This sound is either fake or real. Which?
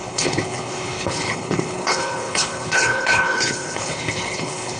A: fake